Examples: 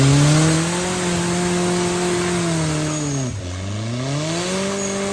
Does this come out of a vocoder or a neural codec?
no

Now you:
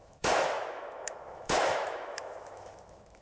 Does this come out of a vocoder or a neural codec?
yes